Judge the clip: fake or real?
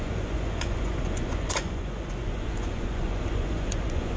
fake